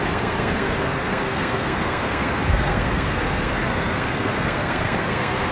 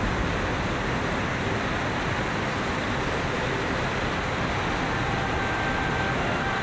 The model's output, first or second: first